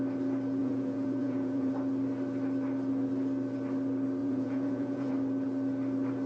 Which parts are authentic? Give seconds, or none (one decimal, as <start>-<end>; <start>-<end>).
0.0-0.6; 1.7-4.2; 5.1-6.3